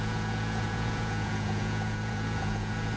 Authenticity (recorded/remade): remade